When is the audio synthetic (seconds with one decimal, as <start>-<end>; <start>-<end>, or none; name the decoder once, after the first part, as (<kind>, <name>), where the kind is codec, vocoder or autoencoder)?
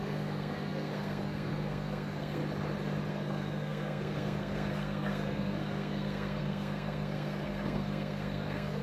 0.0-2.4 (codec, SNAC); 3.1-8.8